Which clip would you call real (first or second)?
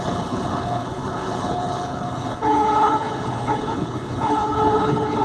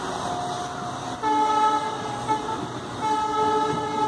second